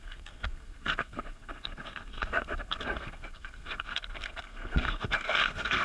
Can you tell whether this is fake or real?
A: fake